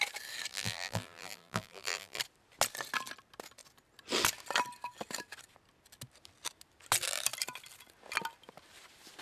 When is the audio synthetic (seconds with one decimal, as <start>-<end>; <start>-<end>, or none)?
0.5-2.2

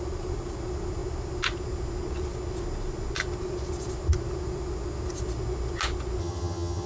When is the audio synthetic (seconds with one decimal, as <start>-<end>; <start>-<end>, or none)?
6.2-6.9